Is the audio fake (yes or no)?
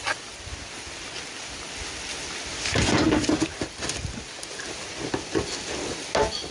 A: no